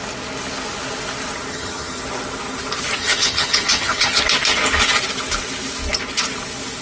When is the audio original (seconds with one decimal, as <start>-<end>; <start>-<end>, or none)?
0.0-1.5; 2.0-3.0; 4.2-6.8